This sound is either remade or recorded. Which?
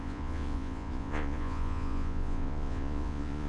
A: remade